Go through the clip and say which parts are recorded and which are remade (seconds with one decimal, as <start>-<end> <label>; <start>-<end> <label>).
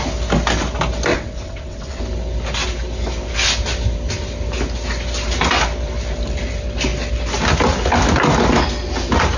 0.0-1.1 recorded; 1.1-2.0 remade; 2.0-9.4 recorded